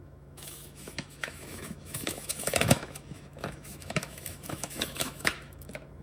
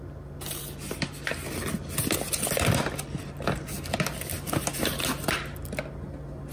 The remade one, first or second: first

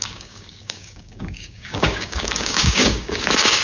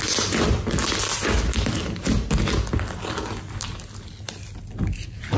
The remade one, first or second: first